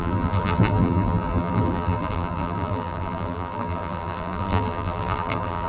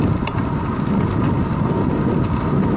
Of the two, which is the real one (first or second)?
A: second